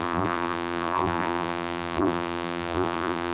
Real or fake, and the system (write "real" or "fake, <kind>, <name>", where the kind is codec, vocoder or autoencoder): fake, vocoder, BigVGAN v2